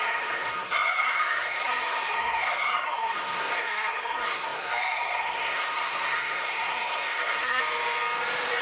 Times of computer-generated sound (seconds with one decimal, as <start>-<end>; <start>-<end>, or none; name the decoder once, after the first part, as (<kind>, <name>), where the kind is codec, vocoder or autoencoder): 0.0-7.6 (codec, SNAC)